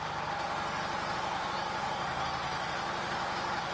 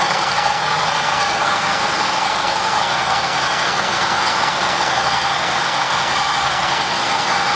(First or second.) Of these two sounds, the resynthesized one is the second